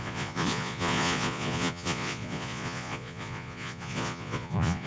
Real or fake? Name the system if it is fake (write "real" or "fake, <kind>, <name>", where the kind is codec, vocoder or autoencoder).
fake, vocoder, Vocos